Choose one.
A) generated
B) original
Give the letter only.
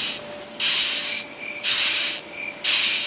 B